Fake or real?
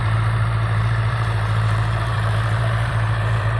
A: fake